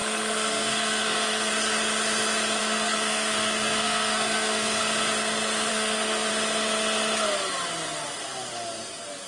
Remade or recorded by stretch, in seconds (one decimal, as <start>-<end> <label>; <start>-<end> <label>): 0.0-1.5 remade; 1.5-2.6 recorded; 2.6-4.8 remade; 4.8-5.7 recorded; 5.7-6.3 remade; 6.3-9.3 recorded